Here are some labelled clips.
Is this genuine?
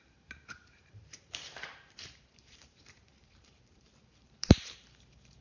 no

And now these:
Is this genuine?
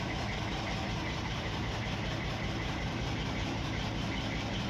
no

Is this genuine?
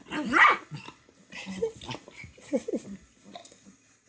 yes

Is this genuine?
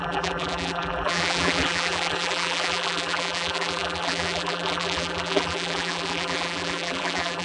no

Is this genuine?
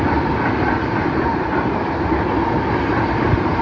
yes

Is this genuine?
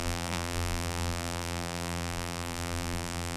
no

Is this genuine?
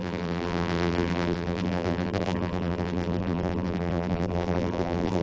no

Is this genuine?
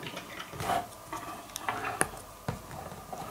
yes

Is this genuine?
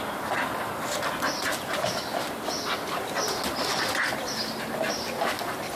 yes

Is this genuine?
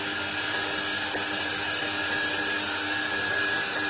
yes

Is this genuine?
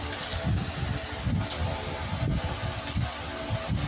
yes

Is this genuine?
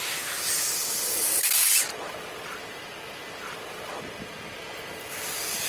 yes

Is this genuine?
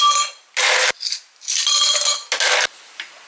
yes